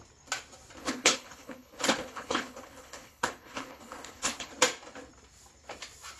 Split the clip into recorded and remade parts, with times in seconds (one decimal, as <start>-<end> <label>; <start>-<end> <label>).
0.0-0.8 recorded; 0.8-4.5 remade; 4.5-6.2 recorded